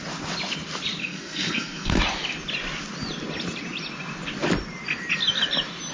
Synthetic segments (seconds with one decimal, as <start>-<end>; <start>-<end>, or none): 1.0-2.0